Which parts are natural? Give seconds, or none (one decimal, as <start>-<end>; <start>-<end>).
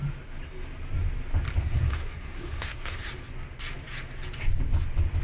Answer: 0.0-1.6; 3.1-5.2